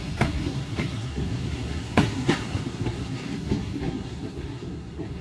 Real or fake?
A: fake